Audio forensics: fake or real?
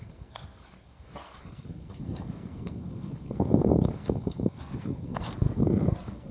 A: fake